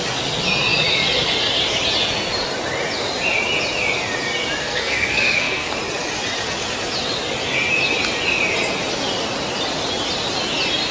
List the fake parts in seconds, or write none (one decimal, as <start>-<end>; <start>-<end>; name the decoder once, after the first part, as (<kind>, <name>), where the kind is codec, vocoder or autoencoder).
4.6-5.7 (codec, SNAC)

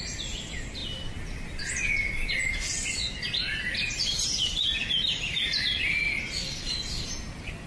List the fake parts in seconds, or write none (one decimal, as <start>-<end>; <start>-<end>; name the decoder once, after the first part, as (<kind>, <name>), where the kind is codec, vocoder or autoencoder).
none

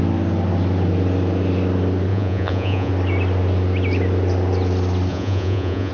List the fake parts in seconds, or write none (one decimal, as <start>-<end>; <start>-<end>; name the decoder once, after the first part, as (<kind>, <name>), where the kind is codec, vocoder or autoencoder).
2.1-2.9 (vocoder, Vocos); 5.1-5.9

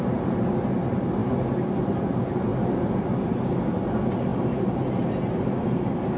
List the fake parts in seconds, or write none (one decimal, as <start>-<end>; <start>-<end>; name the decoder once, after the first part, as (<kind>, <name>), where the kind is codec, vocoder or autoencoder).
none

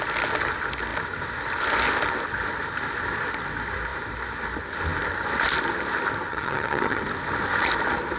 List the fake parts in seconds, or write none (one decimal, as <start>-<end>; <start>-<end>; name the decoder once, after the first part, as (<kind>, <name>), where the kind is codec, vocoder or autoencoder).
6.3-7.0 (vocoder, HiFi-GAN)

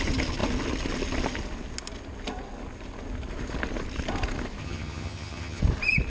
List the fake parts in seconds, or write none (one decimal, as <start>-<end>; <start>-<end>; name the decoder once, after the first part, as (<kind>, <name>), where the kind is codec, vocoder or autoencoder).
4.6-5.6 (vocoder, HiFi-GAN)